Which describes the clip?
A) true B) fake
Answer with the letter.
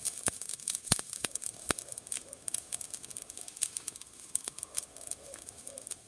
B